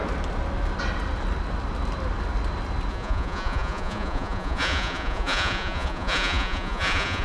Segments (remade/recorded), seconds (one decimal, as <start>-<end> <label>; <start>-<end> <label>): 0.0-2.9 recorded; 2.9-7.2 remade